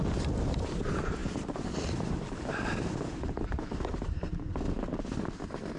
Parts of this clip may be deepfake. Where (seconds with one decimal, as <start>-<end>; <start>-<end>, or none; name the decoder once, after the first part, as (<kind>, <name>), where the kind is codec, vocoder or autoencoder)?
1.2-4.3 (vocoder, BigVGAN v2)